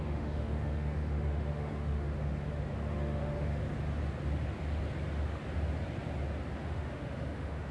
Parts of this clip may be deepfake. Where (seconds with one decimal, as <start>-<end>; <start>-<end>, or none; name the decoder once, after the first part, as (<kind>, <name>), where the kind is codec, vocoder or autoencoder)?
0.0-3.6 (autoencoder, DAC-VAE); 6.7-7.7